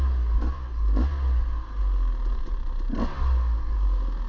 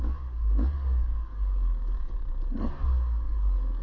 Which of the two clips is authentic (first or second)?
first